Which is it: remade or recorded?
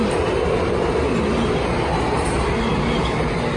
recorded